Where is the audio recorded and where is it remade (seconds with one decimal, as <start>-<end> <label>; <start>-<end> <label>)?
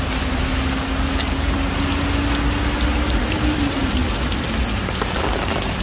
0.0-5.8 recorded